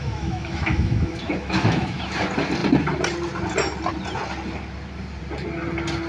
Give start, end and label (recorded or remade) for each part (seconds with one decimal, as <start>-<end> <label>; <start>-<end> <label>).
0.0-2.0 remade; 2.0-6.1 recorded